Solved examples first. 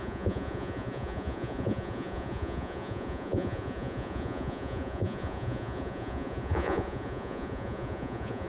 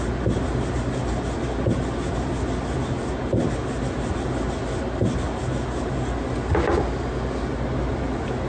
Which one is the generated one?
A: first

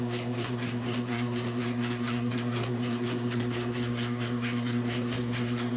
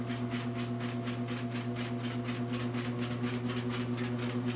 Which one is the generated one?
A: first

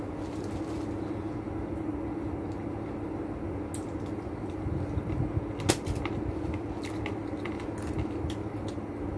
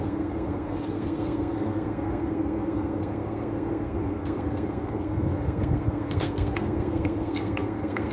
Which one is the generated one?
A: second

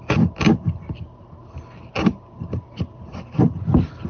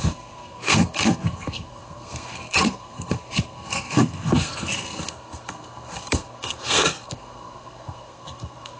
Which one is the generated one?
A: second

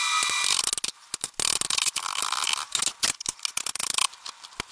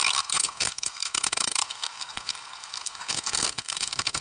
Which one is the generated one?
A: second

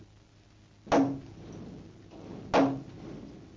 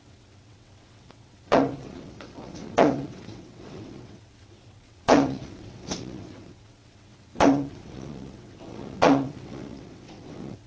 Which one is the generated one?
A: second